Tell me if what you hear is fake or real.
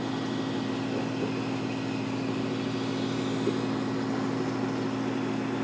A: real